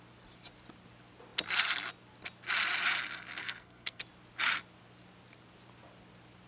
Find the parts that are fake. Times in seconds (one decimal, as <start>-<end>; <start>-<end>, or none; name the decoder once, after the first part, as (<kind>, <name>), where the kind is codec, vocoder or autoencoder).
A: 3.4-4.0 (codec, SNAC)